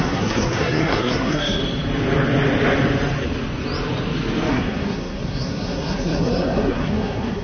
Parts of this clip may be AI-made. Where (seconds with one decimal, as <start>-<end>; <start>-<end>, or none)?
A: 0.0-1.6; 4.5-7.4